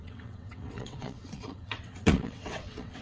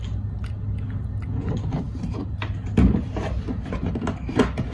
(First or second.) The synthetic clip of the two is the first